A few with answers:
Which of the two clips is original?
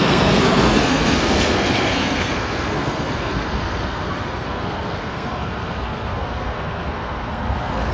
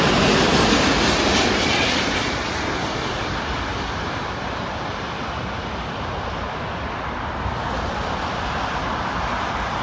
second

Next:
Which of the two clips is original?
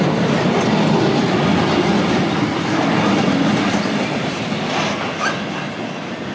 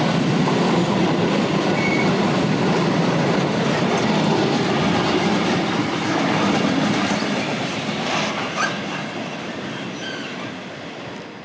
first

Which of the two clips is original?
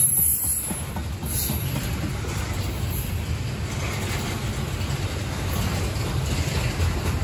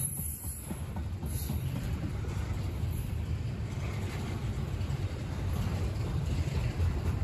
first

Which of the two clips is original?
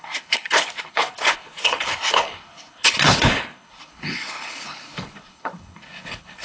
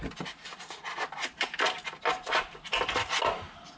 second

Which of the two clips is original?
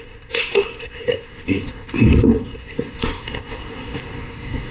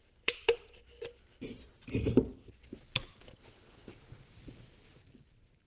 second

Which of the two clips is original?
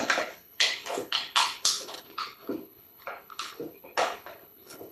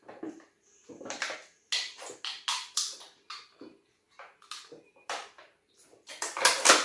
second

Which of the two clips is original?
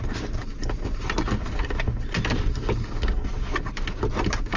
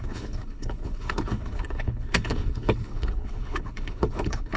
first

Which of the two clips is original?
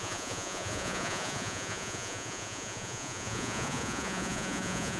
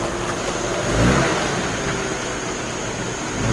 second